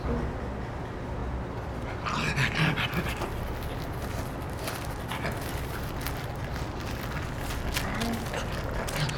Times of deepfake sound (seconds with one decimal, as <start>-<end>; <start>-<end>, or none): none